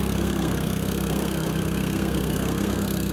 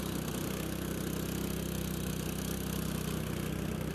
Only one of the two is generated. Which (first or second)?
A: first